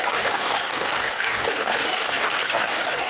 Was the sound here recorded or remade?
remade